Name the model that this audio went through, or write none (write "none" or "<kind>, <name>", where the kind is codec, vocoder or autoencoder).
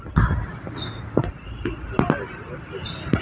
none